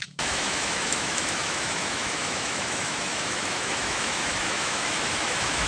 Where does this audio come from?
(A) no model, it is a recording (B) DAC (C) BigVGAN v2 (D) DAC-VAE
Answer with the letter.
D